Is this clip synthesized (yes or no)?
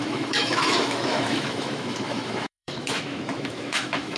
yes